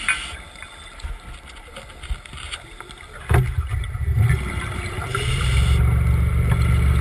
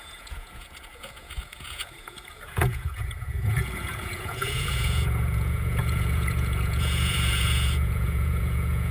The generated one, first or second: second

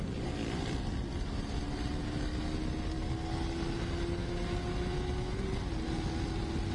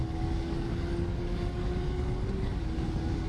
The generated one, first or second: second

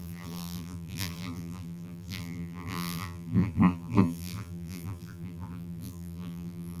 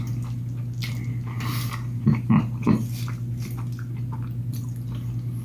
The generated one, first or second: first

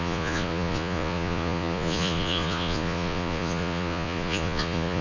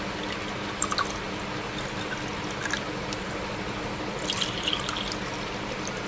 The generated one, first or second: first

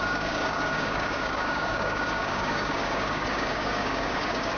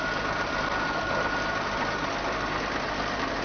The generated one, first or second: first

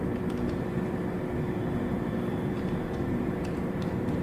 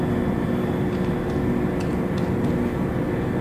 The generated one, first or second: first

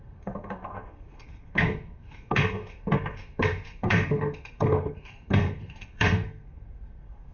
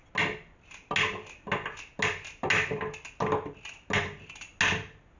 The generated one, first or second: first